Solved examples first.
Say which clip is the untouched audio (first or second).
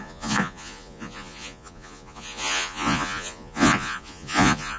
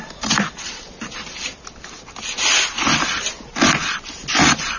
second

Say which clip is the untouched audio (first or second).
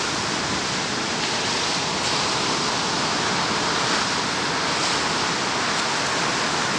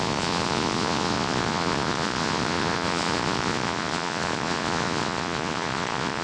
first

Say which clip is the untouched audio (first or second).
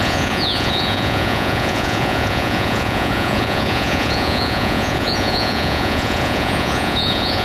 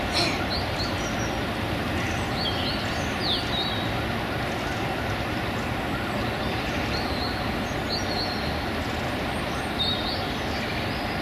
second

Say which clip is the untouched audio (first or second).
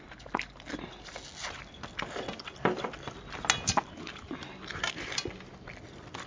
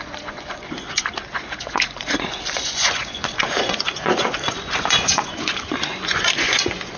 first